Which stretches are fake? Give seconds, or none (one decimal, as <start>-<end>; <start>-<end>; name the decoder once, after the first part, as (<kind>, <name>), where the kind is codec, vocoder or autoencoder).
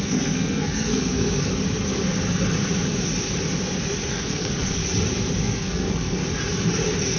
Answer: 0.0-1.5 (codec, SNAC); 4.1-4.8; 5.4-6.2